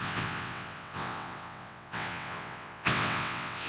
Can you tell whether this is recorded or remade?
remade